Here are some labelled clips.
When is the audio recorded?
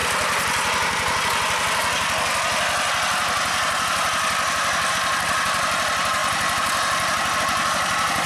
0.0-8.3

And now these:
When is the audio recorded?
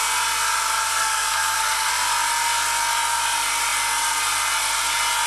0.0-0.9; 1.9-5.3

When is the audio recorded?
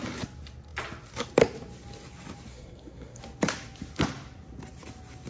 0.0-2.5; 3.2-5.3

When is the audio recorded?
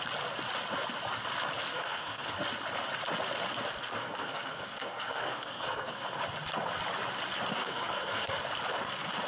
0.0-1.7; 2.3-3.9; 6.2-7.6; 8.4-9.3